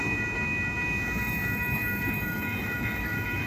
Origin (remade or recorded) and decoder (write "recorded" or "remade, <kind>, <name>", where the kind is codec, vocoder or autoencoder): remade, autoencoder, DAC-VAE